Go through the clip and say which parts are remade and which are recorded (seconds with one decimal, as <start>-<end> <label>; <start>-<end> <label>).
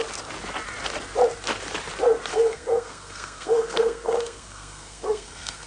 0.0-2.3 recorded; 2.3-5.7 remade